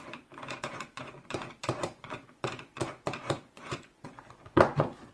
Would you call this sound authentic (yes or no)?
no